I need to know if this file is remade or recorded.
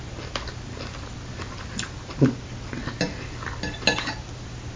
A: recorded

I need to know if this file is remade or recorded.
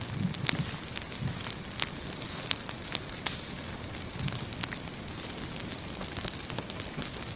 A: recorded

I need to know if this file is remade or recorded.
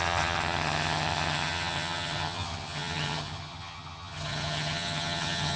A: remade